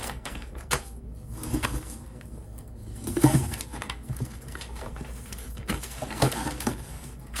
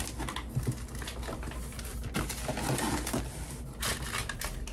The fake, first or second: first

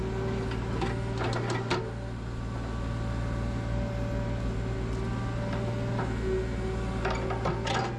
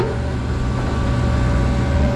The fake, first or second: second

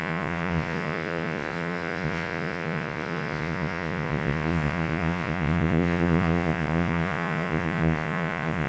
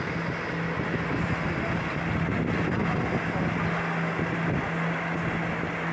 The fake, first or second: first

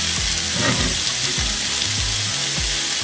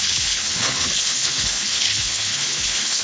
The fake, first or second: second